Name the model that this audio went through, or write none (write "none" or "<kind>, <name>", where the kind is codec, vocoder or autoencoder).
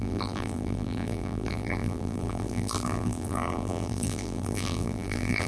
vocoder, BigVGAN v2